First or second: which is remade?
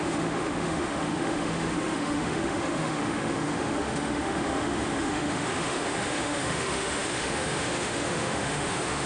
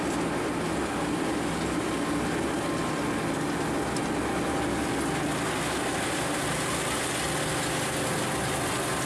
first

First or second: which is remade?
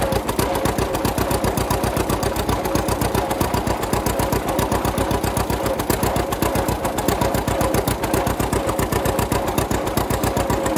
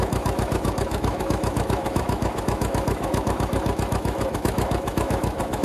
second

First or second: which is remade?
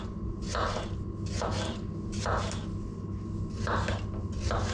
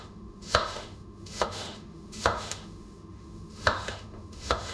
second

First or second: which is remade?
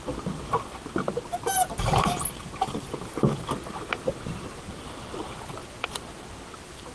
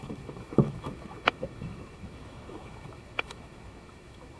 second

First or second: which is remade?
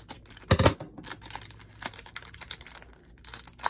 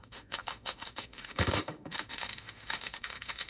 second